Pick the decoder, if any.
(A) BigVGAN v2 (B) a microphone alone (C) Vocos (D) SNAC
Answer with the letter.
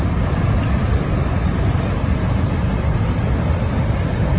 B